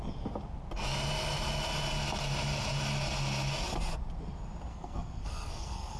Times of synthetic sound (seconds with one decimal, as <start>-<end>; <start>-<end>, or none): 4.7-6.0